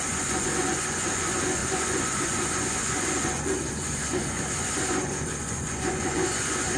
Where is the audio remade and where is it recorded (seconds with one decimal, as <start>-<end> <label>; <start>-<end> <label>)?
0.0-6.8 remade